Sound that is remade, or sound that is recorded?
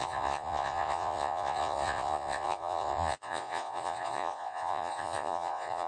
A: remade